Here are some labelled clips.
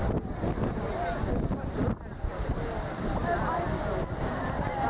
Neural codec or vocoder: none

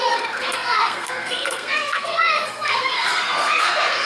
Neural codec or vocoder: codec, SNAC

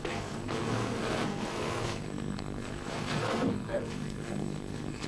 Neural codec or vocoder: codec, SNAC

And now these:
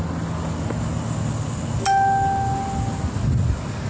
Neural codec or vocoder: none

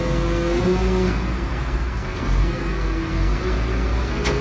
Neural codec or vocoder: codec, SNAC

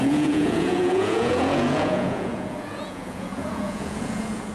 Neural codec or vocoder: vocoder, Vocos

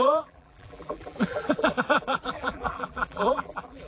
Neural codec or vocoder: vocoder, BigVGAN v2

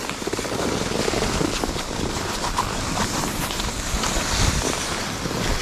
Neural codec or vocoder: none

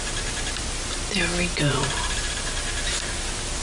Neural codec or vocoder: none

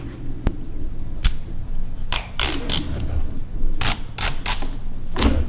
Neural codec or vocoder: none